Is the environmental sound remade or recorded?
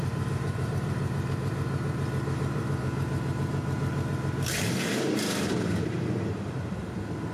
remade